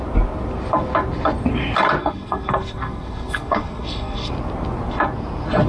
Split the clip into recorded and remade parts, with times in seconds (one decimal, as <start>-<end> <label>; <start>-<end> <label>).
0.0-2.0 recorded; 2.0-4.3 remade; 4.3-5.7 recorded